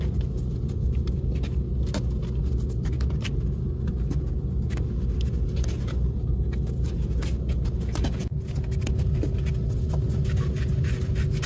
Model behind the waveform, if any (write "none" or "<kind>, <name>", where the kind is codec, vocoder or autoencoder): none